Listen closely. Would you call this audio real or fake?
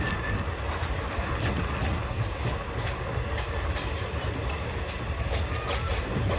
real